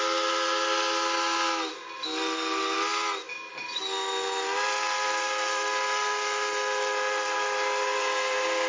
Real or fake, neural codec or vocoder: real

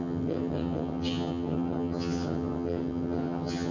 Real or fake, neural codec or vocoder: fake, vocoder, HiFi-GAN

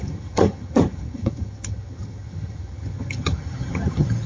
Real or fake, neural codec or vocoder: fake, vocoder, HiFi-GAN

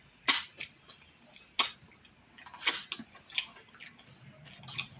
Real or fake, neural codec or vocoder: real